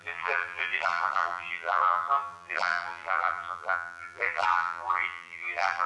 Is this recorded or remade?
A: remade